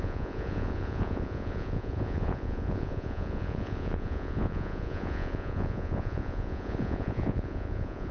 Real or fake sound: fake